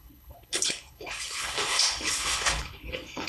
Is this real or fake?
fake